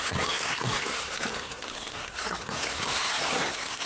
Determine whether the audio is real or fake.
fake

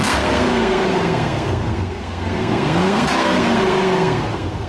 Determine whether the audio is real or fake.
fake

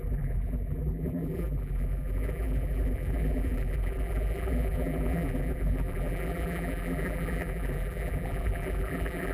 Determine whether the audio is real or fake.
fake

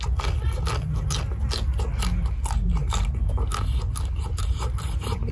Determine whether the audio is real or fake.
real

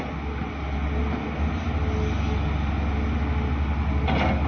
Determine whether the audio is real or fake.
real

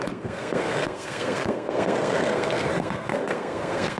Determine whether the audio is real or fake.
fake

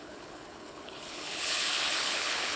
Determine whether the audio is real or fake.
fake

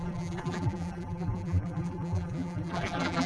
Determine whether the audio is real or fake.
fake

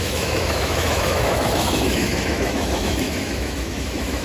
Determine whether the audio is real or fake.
fake